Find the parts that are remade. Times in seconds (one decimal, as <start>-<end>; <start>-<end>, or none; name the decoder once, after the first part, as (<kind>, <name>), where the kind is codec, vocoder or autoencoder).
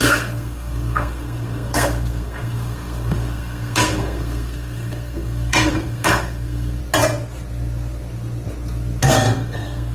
0.0-6.8 (codec, SNAC); 9.0-9.9